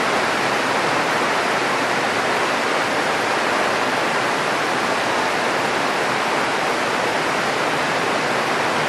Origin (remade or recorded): remade